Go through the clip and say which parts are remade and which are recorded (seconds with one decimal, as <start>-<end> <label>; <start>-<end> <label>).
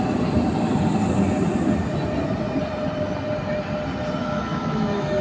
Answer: 0.0-4.2 recorded; 4.2-5.2 remade